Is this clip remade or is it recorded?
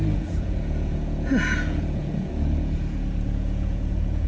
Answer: remade